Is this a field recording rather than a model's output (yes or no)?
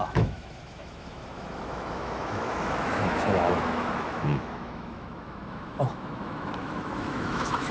no